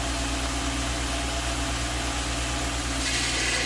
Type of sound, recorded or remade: recorded